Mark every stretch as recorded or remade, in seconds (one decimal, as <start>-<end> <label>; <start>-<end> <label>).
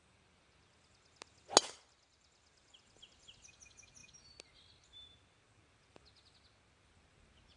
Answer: 0.0-7.6 recorded